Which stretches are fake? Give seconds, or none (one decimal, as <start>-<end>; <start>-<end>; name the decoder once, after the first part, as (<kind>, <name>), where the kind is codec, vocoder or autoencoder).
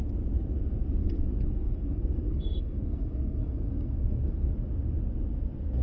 1.0-4.5 (codec, SNAC)